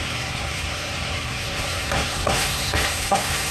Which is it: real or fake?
fake